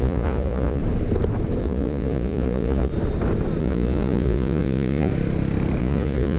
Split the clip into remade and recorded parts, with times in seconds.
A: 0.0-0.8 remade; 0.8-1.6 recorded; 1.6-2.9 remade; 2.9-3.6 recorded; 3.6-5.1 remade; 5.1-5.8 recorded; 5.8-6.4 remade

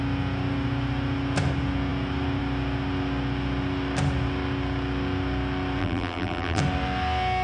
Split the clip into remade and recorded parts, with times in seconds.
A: 0.0-5.8 recorded; 5.8-6.6 remade; 6.6-7.4 recorded